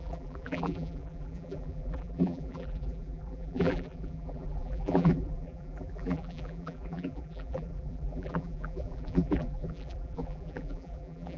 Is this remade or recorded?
remade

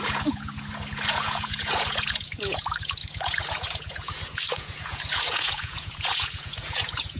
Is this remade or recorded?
remade